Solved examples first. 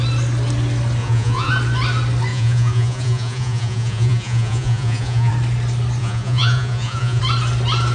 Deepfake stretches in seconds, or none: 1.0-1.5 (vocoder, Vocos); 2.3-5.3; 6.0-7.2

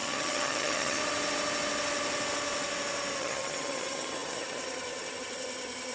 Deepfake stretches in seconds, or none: 0.0-1.0 (vocoder, HiFi-GAN); 3.2-5.9

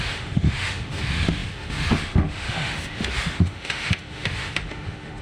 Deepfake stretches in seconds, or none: 0.0-5.2 (autoencoder, DAC-VAE)

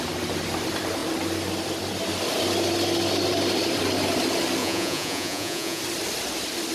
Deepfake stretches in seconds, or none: 4.6-5.8 (vocoder, Vocos)

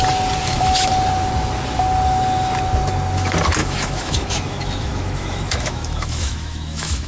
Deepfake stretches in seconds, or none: 0.4-0.9 (autoencoder, DAC-VAE); 3.6-7.1

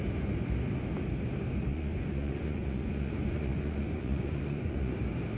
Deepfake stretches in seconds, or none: 1.7-4.9 (vocoder, Vocos)

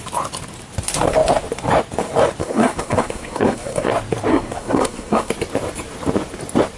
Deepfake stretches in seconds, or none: 2.4-3.9 (codec, SNAC); 4.3-5.3

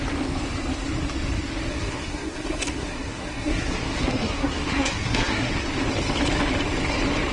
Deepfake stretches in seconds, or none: 1.7-5.5 (codec, SNAC)